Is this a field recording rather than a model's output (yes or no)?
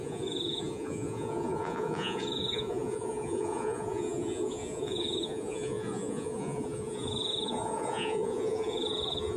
no